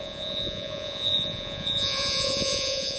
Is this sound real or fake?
fake